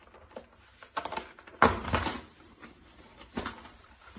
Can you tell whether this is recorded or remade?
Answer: recorded